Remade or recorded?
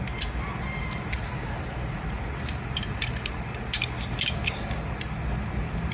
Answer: recorded